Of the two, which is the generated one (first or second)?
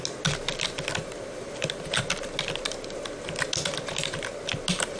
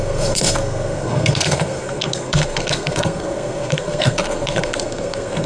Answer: second